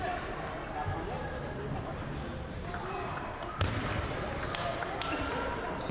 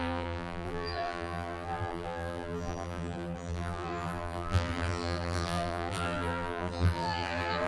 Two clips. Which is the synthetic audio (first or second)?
second